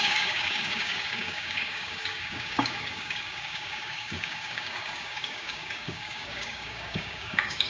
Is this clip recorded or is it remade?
remade